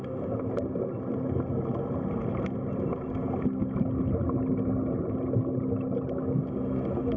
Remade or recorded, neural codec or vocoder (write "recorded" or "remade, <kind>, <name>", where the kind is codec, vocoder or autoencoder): recorded